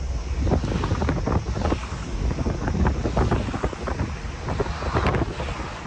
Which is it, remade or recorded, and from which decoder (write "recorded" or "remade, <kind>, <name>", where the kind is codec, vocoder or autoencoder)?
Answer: recorded